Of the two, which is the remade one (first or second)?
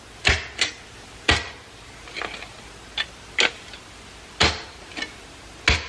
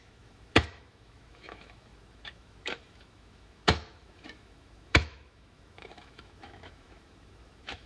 second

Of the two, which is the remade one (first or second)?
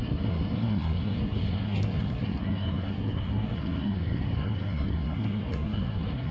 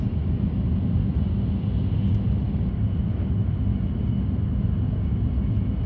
first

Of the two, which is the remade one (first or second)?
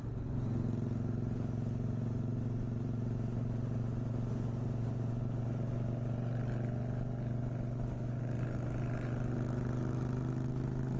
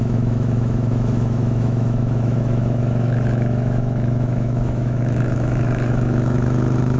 second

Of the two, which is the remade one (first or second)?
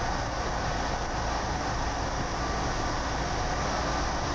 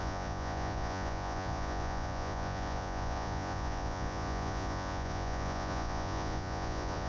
second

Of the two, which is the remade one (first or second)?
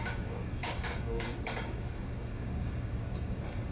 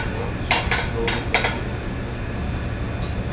first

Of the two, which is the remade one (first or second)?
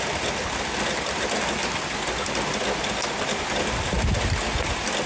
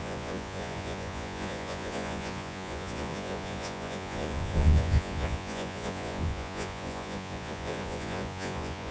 second